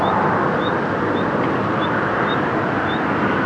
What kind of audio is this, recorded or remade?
recorded